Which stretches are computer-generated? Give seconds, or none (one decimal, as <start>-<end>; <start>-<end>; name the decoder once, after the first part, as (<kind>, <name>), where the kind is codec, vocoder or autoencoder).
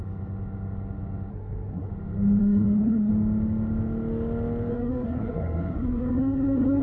1.3-1.9 (codec, SNAC); 2.4-3.1; 4.7-6.8